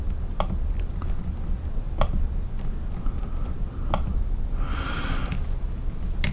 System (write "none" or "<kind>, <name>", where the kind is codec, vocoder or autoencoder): none